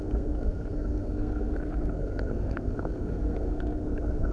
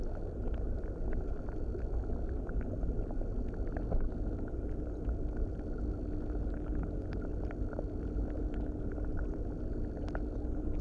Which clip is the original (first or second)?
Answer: second